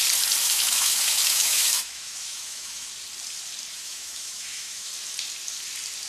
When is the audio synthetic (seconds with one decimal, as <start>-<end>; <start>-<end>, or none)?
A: 0.4-2.9; 3.7-4.9